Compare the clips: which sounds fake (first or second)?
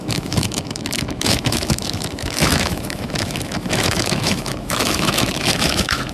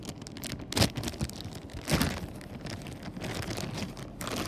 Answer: first